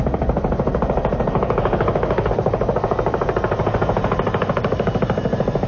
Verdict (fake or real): real